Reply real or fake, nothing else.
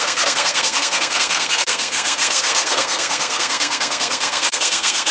fake